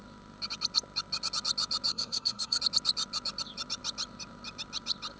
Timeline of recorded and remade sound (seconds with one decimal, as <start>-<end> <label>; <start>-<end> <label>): 0.0-1.9 recorded; 1.9-2.6 remade; 2.6-5.2 recorded